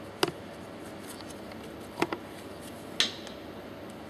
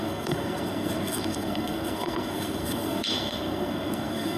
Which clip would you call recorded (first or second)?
first